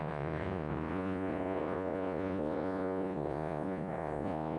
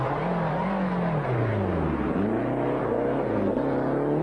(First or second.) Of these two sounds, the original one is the second